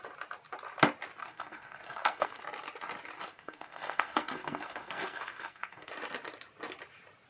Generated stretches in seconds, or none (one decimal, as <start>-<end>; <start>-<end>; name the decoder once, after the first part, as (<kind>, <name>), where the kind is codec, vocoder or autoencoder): 1.2-2.4 (codec, SNAC); 3.3-5.9